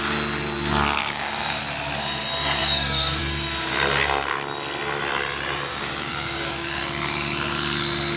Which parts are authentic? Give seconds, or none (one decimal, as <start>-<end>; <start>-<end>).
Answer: 0.0-1.0; 1.6-2.6; 3.2-5.7; 6.8-8.2